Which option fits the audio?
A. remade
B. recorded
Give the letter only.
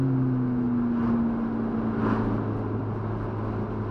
B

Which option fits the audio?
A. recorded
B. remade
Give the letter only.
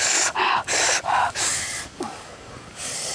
B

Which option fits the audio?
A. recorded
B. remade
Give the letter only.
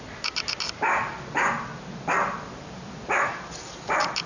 A